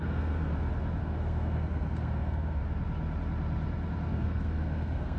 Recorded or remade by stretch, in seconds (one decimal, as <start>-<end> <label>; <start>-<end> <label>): 0.0-0.5 remade; 0.5-1.0 recorded; 1.0-2.6 remade; 2.6-4.1 recorded; 4.1-5.2 remade